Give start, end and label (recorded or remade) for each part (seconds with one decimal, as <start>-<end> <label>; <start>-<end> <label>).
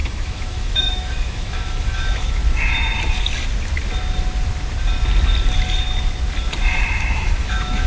0.0-2.4 remade; 2.4-7.1 recorded; 7.1-7.9 remade